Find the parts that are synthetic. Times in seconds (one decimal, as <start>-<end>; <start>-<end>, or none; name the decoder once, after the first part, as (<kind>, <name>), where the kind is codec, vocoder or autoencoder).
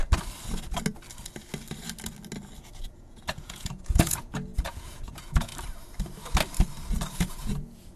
2.8-5.5 (vocoder, Vocos); 7.3-8.0